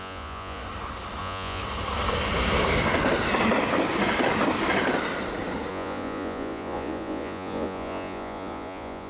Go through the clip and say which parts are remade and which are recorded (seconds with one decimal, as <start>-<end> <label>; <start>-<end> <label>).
0.0-0.6 remade; 0.6-1.2 recorded; 1.2-1.6 remade; 1.6-5.7 recorded; 5.7-9.1 remade